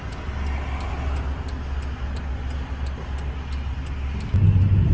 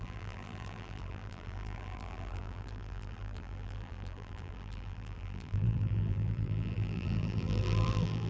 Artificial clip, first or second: second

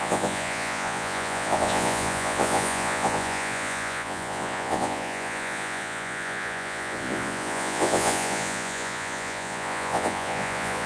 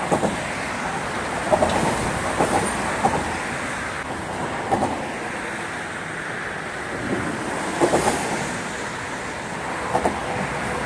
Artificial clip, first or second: first